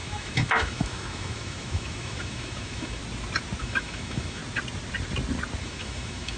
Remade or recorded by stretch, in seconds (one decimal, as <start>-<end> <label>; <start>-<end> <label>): 0.0-3.0 remade; 3.0-3.6 recorded; 3.6-4.4 remade; 4.4-5.6 recorded; 5.6-6.4 remade